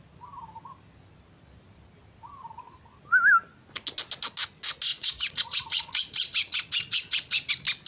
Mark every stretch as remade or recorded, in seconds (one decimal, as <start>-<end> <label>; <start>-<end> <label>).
0.0-4.9 recorded; 4.9-7.5 remade; 7.5-7.9 recorded